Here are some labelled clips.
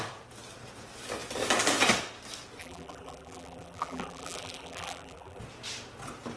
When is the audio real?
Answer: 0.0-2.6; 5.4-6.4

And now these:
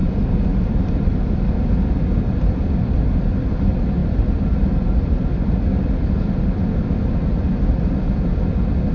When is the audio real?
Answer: 0.0-8.9

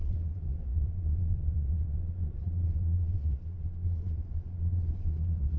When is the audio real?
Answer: none

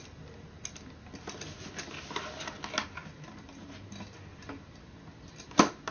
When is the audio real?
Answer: 0.0-3.0; 3.9-5.9

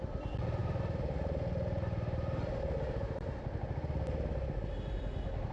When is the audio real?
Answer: 0.0-5.5